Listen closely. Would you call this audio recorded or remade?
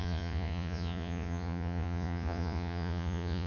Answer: remade